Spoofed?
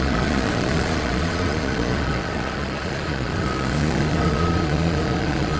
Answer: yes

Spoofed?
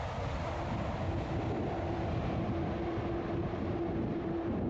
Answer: no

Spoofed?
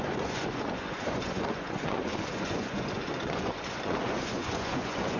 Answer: yes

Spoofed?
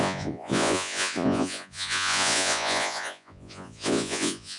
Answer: yes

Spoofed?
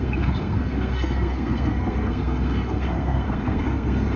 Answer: yes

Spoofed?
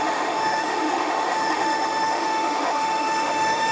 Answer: yes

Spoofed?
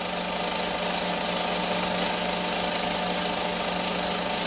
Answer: no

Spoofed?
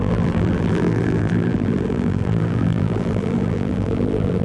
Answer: yes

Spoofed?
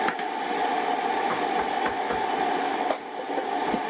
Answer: no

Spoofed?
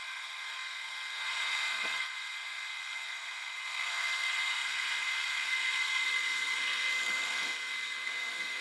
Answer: yes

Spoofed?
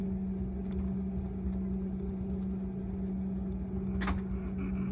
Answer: no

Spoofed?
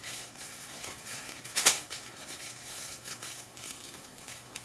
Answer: yes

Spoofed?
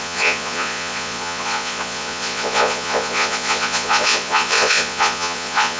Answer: yes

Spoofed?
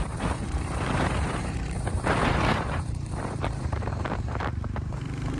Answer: yes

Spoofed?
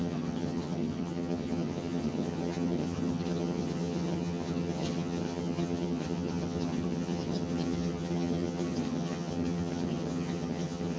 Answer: yes